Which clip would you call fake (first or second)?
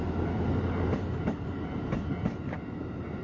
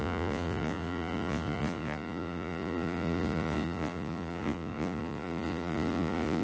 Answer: second